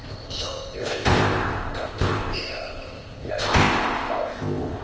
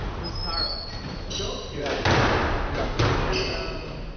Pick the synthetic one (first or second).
first